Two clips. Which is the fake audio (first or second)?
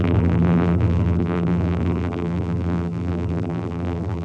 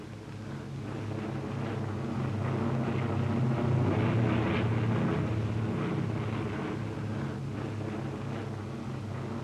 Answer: first